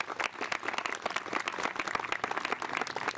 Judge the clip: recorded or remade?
recorded